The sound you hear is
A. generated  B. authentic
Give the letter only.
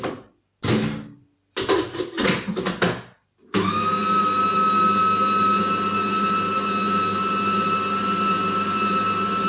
B